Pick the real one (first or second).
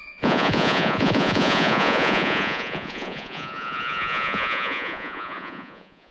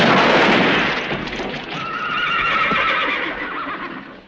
second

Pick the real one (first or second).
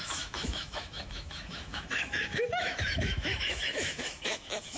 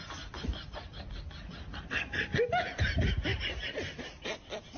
second